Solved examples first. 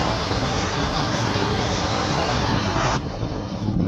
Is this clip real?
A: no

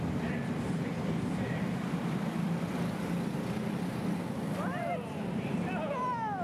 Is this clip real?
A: yes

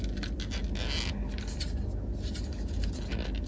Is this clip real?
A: yes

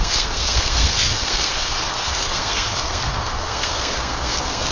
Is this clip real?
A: no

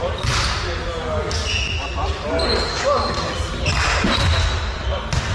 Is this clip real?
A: yes